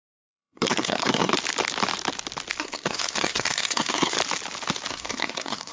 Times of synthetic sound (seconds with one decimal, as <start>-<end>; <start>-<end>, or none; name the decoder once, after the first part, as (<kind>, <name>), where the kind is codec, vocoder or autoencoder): 0.0-1.3 (codec, SNAC); 2.6-4.2; 4.9-5.7

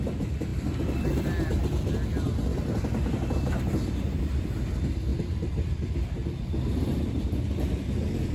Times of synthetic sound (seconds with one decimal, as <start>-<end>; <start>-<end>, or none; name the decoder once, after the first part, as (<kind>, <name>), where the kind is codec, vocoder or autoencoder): 0.5-1.1 (vocoder, BigVGAN v2); 2.5-3.3; 5.1-7.2

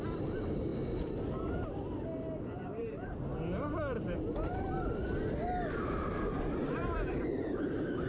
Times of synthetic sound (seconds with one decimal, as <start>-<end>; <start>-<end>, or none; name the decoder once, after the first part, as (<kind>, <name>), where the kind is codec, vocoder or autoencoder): 0.0-0.7 (vocoder, BigVGAN v2); 1.5-1.9; 2.8-3.3; 6.6-8.1

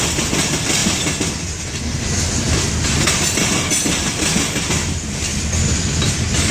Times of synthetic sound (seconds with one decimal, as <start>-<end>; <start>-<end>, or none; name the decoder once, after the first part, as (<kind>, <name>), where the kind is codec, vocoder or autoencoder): none

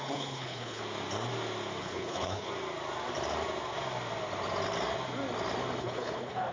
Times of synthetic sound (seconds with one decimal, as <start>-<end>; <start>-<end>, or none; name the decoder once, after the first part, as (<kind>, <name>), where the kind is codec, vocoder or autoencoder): 0.0-0.8 (codec, HILCodec); 1.8-2.5; 5.8-6.5

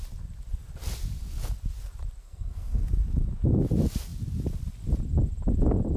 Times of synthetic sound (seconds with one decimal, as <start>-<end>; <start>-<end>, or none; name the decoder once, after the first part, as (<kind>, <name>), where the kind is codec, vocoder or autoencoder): 2.2-2.8 (codec, SNAC)

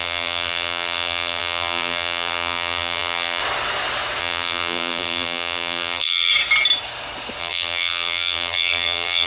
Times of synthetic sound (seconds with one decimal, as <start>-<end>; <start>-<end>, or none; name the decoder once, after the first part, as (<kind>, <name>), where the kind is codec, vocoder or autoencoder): 0.0-3.4 (vocoder, BigVGAN v2); 4.2-6.3; 7.4-9.3